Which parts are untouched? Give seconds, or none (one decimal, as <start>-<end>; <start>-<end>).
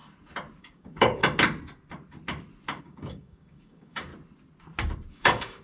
0.0-0.6; 1.2-2.8; 4.1-5.1